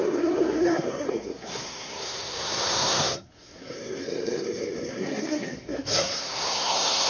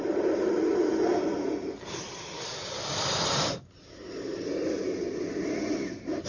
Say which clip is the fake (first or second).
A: first